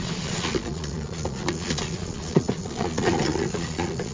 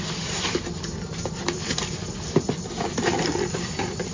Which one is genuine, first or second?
second